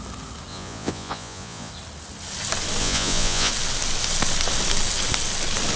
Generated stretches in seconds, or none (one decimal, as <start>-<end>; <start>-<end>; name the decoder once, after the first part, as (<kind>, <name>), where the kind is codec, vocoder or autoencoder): 0.5-1.7 (vocoder, Vocos); 2.8-3.5